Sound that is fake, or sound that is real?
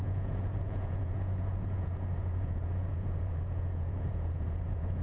fake